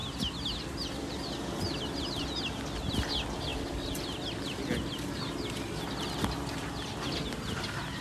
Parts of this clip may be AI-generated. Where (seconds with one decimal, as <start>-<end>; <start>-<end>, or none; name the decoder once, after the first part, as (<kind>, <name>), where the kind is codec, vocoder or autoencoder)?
none